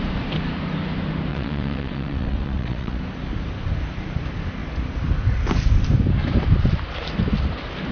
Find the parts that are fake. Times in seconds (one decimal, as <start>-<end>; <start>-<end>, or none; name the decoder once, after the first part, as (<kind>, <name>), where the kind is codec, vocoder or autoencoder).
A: 1.3-3.0 (vocoder, WaveNeXt)